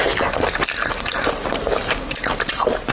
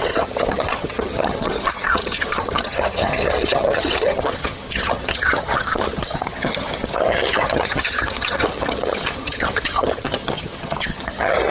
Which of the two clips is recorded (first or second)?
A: first